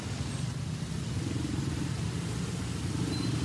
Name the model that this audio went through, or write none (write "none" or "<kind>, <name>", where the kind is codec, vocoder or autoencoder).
none